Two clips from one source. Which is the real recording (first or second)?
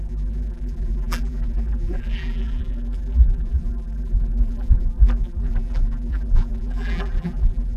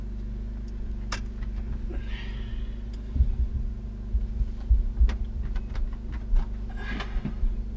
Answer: second